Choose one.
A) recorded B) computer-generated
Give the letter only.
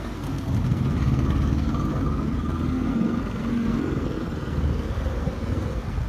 B